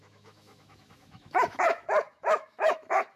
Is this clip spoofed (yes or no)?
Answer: yes